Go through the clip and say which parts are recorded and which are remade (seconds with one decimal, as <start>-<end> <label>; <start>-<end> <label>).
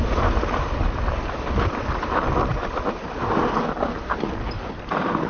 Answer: 0.0-5.3 recorded